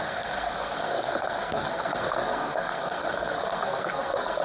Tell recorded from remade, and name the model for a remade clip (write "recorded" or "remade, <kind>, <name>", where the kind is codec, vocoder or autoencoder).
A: remade, codec, SNAC